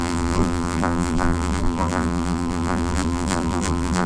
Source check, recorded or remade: remade